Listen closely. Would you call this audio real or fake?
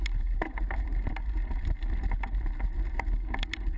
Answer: fake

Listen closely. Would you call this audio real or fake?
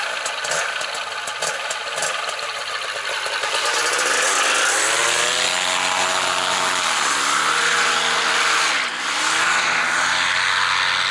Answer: real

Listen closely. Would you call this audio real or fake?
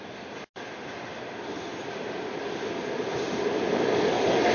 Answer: real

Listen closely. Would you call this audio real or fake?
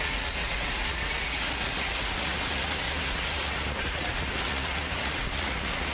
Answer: fake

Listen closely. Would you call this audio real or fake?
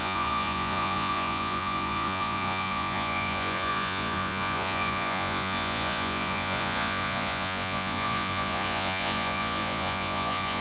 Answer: fake